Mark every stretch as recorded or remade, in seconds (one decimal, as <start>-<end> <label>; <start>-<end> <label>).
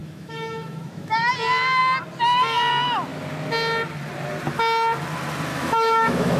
0.0-1.3 remade; 1.3-5.5 recorded; 5.5-6.4 remade